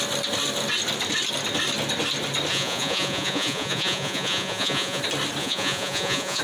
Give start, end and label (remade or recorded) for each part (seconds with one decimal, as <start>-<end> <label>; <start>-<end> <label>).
0.0-2.5 recorded; 2.5-5.0 remade; 5.0-5.4 recorded; 5.4-6.4 remade